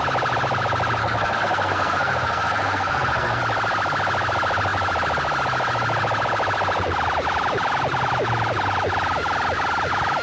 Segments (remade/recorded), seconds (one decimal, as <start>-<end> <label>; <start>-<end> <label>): 0.0-1.0 recorded; 1.0-3.4 remade; 3.4-10.2 recorded